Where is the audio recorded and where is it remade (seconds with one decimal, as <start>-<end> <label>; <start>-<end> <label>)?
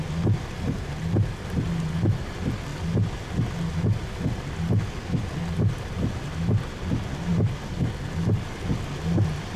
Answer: 0.0-9.6 recorded